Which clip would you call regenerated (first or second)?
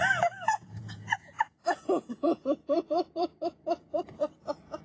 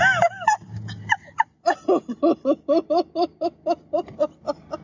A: first